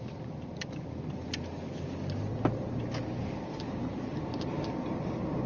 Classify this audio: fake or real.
real